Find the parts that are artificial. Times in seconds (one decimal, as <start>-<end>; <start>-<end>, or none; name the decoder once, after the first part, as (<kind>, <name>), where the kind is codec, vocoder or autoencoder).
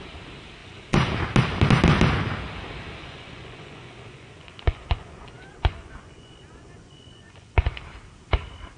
0.6-1.1 (vocoder, Vocos); 3.0-7.8